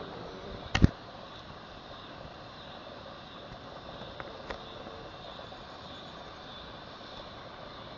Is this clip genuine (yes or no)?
yes